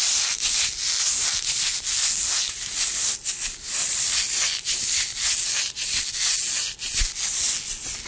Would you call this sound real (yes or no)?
yes